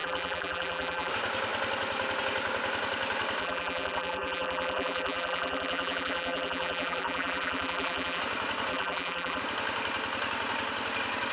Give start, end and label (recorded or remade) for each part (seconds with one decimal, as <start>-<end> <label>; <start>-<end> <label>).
0.0-1.1 remade; 1.1-3.4 recorded; 3.4-8.2 remade; 8.2-8.7 recorded; 8.7-9.4 remade; 9.4-11.3 recorded